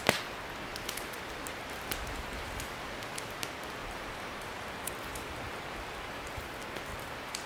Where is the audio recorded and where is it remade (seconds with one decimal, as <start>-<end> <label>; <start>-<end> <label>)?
0.0-3.8 recorded; 3.8-6.5 remade; 6.5-6.9 recorded; 6.9-7.5 remade